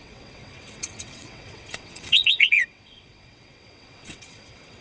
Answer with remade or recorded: remade